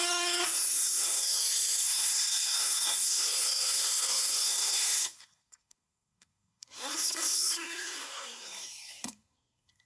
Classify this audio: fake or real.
fake